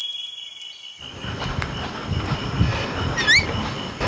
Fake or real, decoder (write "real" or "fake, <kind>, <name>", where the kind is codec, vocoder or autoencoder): real